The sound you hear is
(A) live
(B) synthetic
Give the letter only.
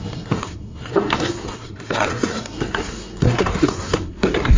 B